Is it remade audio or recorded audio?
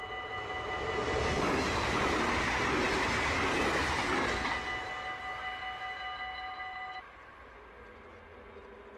recorded